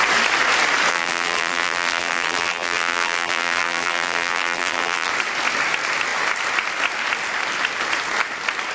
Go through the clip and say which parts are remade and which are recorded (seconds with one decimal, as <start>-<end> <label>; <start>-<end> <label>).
0.0-0.9 recorded; 0.9-5.1 remade; 5.1-8.7 recorded